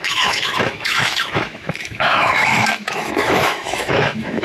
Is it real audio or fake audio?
fake